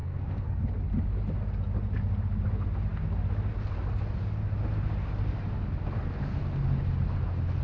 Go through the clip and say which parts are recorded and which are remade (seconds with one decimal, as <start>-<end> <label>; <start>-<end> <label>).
0.0-0.6 remade; 0.6-7.6 recorded